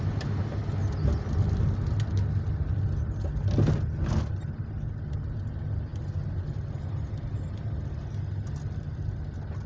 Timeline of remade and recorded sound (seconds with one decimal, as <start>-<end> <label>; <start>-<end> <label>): 0.0-9.7 recorded